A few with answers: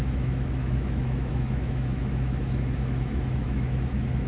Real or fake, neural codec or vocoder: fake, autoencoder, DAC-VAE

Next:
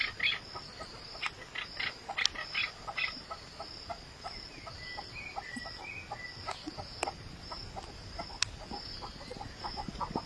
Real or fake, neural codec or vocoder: real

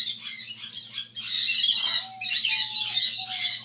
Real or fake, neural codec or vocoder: real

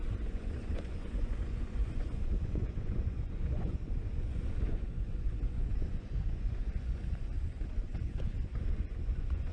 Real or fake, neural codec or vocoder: fake, vocoder, Vocos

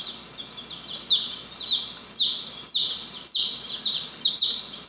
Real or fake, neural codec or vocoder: real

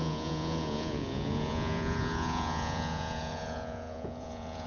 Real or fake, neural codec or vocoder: fake, vocoder, Vocos